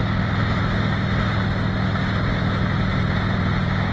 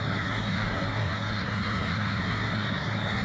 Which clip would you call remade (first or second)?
second